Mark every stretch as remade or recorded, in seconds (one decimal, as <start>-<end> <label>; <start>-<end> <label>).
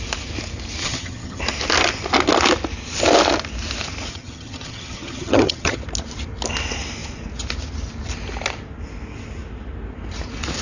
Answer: 0.0-0.8 recorded; 0.8-1.4 remade; 1.4-4.1 recorded; 4.1-5.8 remade; 5.8-10.6 recorded